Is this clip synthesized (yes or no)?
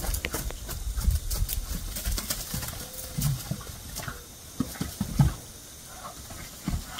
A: no